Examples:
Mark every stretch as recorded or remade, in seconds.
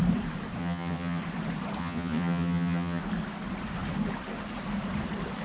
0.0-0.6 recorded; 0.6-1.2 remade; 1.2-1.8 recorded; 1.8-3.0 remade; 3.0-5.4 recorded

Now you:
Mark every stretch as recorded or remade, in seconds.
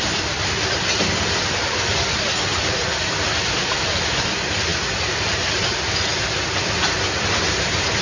0.0-8.0 recorded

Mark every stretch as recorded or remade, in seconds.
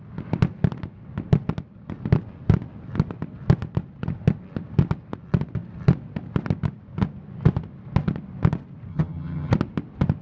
0.0-8.9 recorded; 8.9-9.5 remade; 9.5-10.2 recorded